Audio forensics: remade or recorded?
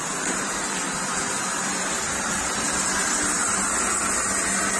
recorded